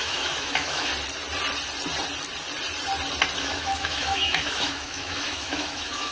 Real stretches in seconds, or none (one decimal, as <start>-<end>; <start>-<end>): 0.9-3.4